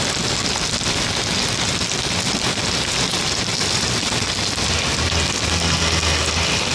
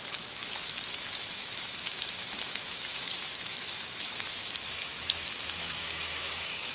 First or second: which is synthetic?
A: second